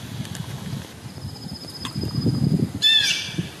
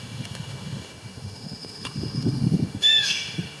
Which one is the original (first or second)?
first